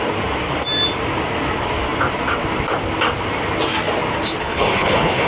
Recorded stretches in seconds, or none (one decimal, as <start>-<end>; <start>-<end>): 0.0-4.4